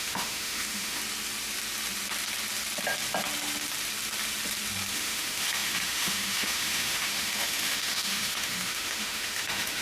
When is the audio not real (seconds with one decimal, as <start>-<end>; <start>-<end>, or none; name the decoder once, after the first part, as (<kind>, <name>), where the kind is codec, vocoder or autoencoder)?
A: 0.0-1.0 (autoencoder, DAC-VAE); 4.9-9.8